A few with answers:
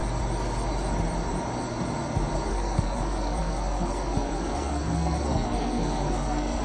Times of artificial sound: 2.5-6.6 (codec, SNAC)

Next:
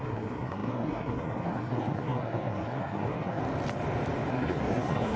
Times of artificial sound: 0.0-3.4 (codec, SNAC); 4.3-5.2

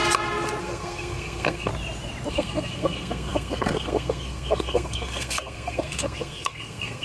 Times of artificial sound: 0.6-1.7 (codec, SNAC); 2.3-7.0

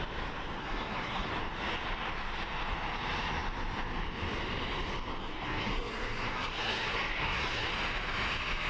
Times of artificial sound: 0.6-1.3 (codec, SNAC); 5.2-7.7